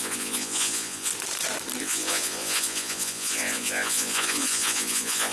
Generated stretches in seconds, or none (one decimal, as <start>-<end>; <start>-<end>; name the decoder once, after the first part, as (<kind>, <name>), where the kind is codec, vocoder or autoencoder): 0.0-1.1 (vocoder, Vocos); 1.8-5.3